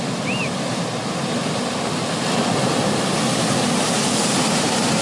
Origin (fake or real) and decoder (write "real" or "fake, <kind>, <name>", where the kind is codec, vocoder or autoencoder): real